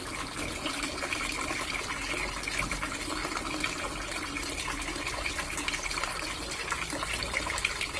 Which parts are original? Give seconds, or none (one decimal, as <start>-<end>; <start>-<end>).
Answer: 0.0-8.0